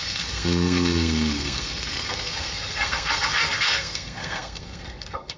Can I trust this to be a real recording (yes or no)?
no